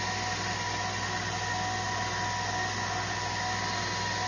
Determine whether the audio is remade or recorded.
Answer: recorded